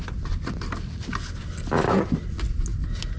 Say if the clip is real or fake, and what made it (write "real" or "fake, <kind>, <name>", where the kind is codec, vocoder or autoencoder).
real